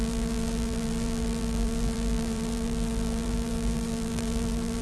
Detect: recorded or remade remade